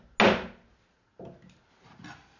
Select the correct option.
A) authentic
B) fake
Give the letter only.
A